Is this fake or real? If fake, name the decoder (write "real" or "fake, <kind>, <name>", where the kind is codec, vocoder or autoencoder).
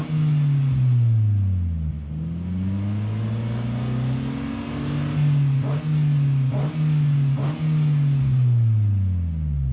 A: real